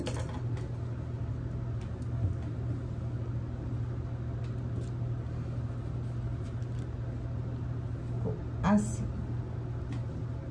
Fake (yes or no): no